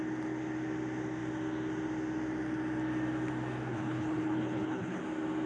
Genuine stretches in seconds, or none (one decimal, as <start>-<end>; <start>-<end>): 0.0-3.7; 5.0-5.5